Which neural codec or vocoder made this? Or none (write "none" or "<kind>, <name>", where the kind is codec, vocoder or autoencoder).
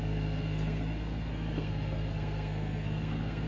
codec, SNAC